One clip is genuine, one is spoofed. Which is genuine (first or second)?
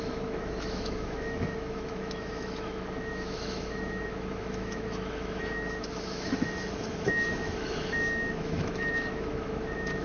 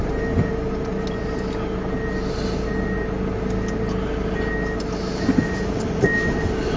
second